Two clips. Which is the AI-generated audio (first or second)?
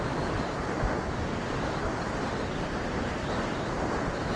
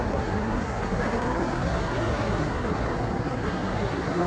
second